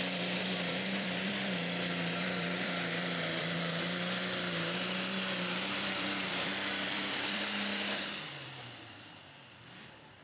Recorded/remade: remade